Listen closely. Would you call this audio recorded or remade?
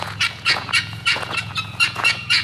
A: remade